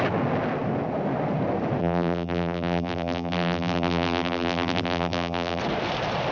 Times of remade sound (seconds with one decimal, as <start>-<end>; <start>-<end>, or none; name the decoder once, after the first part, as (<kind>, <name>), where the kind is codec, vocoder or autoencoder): 1.8-5.6 (vocoder, BigVGAN v2)